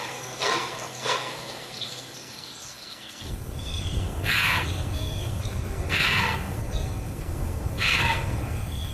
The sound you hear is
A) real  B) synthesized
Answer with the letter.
B